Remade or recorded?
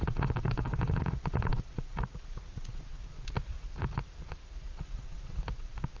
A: remade